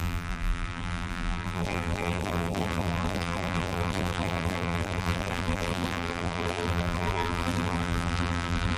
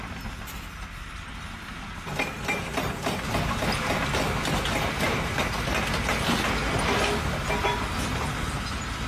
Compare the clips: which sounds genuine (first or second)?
second